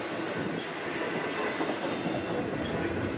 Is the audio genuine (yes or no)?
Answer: yes